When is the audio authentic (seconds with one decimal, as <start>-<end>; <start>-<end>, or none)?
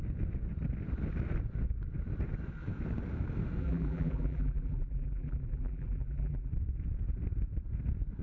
0.0-3.6; 6.5-8.2